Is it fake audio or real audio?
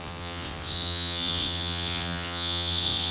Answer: fake